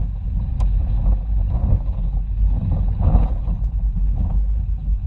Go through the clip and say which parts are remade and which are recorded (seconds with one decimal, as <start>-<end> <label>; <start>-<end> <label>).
0.0-1.6 recorded; 1.6-5.1 remade